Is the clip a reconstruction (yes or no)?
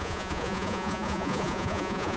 yes